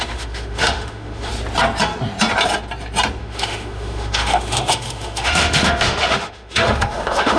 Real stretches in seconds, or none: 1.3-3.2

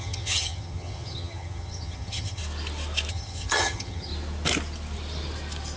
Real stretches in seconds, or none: 2.4-3.1; 4.1-5.8

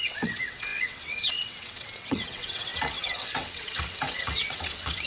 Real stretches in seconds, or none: none

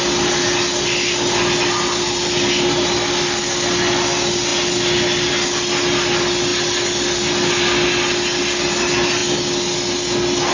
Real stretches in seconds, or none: 0.0-10.5

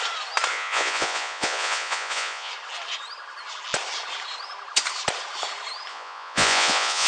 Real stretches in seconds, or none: 0.0-0.5; 2.5-5.9